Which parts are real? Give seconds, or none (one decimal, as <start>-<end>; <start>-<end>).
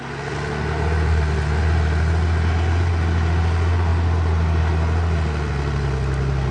0.0-6.5